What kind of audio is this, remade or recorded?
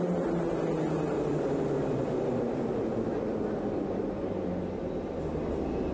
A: recorded